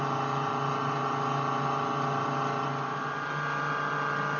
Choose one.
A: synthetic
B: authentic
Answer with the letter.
B